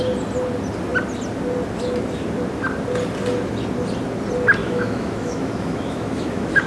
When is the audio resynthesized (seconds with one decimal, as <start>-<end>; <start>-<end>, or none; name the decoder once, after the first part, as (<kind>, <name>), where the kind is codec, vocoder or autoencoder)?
4.6-6.7 (autoencoder, DAC-VAE)